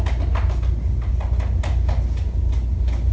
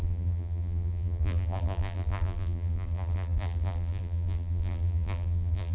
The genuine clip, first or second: first